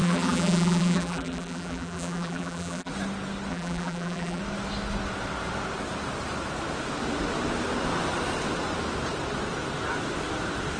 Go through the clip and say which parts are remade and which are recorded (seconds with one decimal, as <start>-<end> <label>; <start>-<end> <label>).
0.0-2.9 remade; 2.9-3.5 recorded; 3.5-4.4 remade; 4.4-10.8 recorded